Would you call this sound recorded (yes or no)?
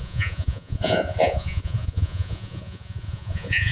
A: no